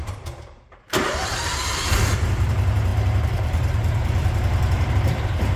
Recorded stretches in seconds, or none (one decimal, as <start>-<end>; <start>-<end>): none